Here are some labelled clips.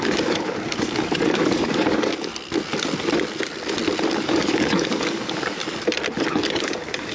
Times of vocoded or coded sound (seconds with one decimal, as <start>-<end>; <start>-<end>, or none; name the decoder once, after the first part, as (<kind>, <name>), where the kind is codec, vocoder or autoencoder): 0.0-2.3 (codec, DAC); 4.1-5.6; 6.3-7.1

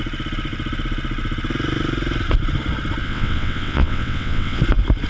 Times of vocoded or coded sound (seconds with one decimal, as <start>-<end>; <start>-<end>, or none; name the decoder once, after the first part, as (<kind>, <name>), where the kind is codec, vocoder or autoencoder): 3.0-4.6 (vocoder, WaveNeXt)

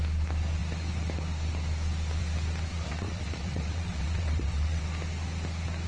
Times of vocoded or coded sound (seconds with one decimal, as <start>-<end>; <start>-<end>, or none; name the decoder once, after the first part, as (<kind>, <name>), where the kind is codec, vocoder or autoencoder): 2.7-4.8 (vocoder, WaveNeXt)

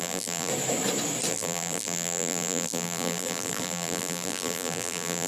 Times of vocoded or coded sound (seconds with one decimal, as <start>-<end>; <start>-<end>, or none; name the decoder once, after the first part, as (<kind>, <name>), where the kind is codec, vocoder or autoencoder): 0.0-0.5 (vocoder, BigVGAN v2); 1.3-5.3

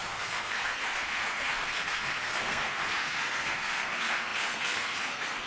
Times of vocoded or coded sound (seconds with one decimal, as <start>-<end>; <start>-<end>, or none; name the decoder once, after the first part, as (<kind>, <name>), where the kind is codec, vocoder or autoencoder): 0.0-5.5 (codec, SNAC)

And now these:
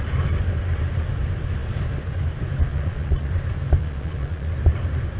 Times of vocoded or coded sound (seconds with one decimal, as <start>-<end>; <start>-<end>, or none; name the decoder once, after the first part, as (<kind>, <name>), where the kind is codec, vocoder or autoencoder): 2.7-3.3 (vocoder, Vocos); 3.8-4.5

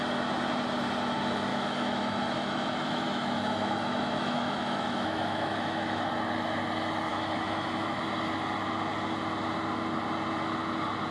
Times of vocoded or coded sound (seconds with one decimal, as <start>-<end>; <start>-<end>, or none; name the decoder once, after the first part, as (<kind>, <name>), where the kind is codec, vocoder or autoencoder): 1.5-6.1 (autoencoder, DAC-VAE); 7.1-8.0

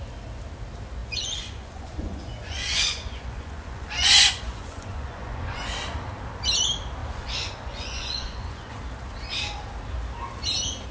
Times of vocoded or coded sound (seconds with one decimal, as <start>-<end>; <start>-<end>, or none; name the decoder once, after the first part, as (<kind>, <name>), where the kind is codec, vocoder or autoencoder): 1.0-5.7 (vocoder, Vocos); 7.0-8.8